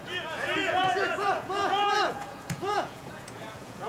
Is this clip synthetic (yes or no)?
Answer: yes